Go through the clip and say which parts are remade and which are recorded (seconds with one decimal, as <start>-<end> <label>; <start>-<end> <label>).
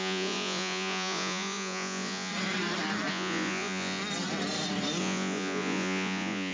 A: 0.0-2.3 remade; 2.3-3.1 recorded; 3.1-4.0 remade; 4.0-5.0 recorded; 5.0-6.5 remade